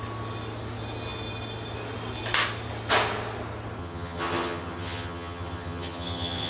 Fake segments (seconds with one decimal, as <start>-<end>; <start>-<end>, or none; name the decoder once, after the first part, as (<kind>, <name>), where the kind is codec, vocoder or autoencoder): 3.8-6.5 (vocoder, HiFi-GAN)